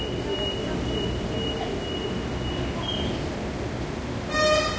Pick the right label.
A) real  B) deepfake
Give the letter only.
A